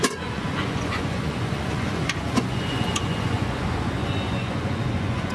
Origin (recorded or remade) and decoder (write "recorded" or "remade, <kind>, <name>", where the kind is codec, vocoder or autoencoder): remade, vocoder, Vocos